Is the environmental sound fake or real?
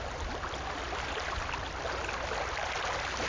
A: real